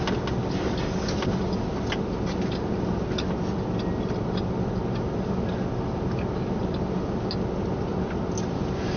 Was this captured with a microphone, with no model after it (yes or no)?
yes